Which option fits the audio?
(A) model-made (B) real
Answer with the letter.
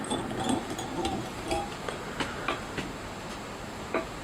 B